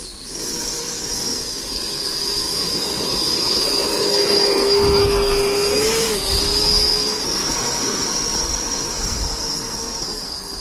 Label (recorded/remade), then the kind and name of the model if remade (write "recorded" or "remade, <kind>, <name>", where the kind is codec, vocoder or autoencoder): remade, codec, SNAC